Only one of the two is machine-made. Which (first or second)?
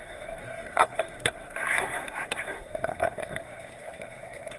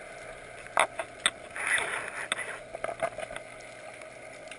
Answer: first